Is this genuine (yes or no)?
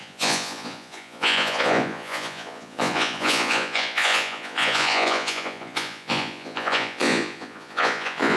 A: no